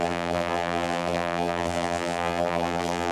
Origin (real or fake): fake